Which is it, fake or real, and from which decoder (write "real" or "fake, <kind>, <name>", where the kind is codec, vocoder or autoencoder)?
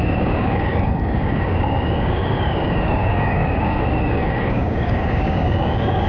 fake, codec, DAC